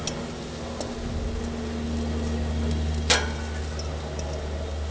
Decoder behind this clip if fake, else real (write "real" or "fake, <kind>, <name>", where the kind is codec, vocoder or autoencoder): real